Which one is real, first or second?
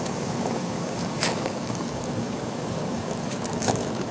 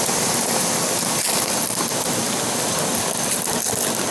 second